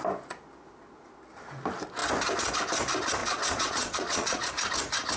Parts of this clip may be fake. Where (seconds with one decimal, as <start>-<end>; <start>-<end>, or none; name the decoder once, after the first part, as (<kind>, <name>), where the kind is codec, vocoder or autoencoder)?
3.2-4.5 (vocoder, Vocos)